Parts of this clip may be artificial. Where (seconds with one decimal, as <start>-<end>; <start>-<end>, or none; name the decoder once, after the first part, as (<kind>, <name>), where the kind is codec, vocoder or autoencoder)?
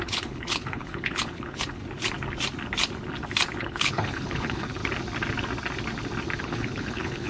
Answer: 0.0-1.8 (codec, HILCodec); 3.6-4.8; 6.4-7.3